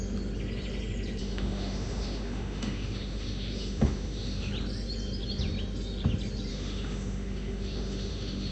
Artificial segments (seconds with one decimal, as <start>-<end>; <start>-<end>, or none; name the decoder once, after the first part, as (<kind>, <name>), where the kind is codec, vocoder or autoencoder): 1.2-4.5 (autoencoder, DAC-VAE); 6.5-8.5